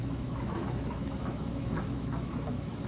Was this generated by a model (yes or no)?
yes